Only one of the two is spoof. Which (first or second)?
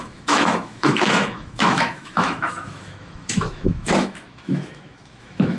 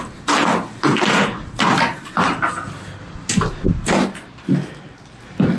first